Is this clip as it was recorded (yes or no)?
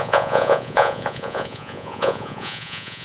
no